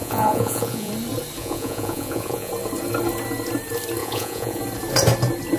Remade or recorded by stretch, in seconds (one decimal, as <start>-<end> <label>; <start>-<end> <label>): 0.0-0.9 remade; 0.9-1.4 recorded; 1.4-2.5 remade; 2.5-4.0 recorded; 4.0-4.6 remade; 4.6-5.6 recorded